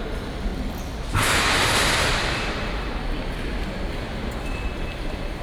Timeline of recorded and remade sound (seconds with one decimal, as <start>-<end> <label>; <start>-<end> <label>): 0.0-5.4 recorded